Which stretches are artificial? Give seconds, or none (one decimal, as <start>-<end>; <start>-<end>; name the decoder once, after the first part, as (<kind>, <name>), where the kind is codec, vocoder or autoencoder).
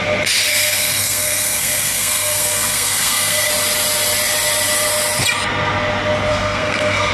0.5-3.5 (codec, SNAC); 6.3-7.1